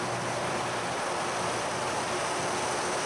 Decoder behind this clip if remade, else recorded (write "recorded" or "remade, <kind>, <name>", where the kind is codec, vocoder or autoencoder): recorded